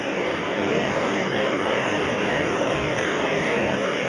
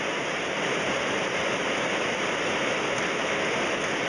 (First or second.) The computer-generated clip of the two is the first